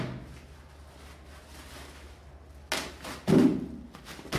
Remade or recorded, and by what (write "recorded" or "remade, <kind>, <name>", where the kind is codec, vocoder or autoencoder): recorded